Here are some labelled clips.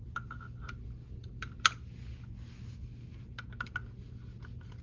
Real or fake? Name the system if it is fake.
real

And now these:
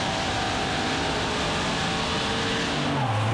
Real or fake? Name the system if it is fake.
real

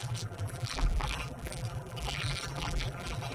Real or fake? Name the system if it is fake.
fake, vocoder, BigVGAN v2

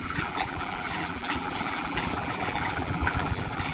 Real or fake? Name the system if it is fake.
fake, vocoder, BigVGAN v2